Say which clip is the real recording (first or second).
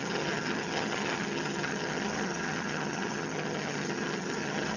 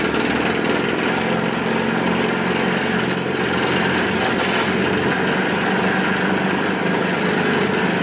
second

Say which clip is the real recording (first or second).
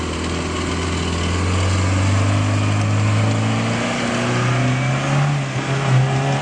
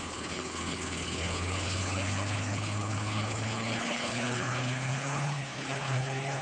first